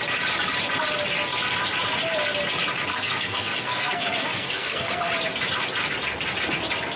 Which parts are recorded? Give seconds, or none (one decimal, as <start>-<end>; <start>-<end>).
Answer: 0.0-2.9; 5.1-7.0